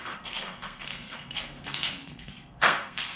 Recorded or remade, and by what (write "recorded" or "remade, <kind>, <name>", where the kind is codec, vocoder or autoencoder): remade, codec, SNAC